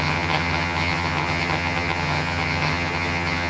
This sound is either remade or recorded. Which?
remade